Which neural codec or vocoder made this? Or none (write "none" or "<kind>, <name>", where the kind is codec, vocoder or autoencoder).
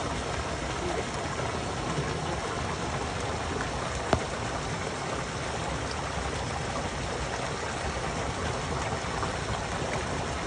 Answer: none